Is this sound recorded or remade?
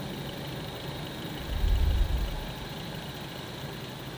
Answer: remade